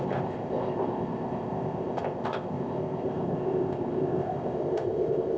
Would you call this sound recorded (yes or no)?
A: no